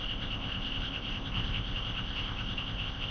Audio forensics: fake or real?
fake